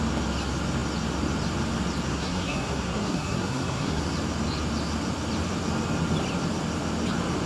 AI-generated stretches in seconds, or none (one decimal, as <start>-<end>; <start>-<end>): 2.1-4.0